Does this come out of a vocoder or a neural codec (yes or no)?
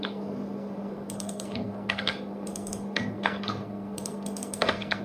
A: yes